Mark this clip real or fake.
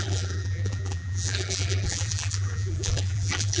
fake